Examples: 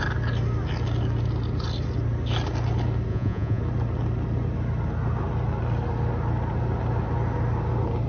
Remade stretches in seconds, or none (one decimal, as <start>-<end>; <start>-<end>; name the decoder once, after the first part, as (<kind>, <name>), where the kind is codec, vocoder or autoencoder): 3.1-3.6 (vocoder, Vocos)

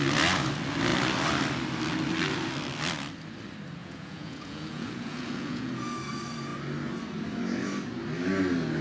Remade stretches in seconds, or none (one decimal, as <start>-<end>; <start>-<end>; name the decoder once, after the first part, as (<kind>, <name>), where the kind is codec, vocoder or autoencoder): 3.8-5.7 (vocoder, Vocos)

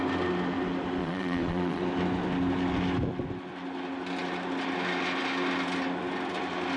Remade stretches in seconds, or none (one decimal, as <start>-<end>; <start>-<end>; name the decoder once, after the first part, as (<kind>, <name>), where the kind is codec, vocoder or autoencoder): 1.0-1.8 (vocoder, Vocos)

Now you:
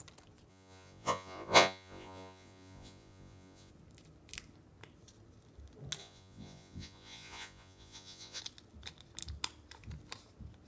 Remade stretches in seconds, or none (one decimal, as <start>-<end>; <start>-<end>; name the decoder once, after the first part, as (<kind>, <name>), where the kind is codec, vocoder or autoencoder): 0.5-3.7 (vocoder, Vocos); 6.0-8.4

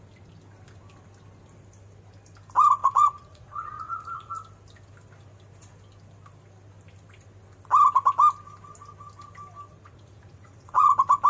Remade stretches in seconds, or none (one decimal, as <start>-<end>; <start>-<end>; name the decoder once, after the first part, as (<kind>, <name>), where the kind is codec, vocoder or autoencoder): 2.8-4.3 (vocoder, Vocos); 9.7-10.9